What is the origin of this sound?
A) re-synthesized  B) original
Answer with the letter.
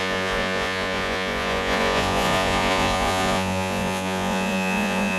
A